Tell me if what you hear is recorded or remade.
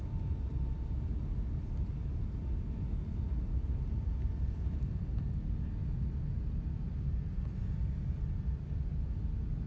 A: recorded